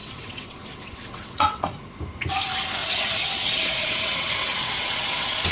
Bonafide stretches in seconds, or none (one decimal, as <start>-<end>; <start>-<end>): 1.7-2.8